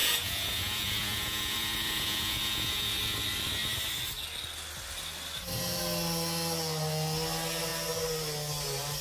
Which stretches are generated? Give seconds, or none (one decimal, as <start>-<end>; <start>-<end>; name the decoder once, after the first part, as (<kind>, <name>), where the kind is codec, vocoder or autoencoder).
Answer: 0.0-3.0 (vocoder, Vocos)